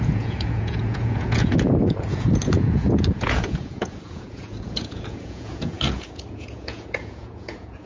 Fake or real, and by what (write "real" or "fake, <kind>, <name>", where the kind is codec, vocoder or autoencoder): fake, vocoder, Vocos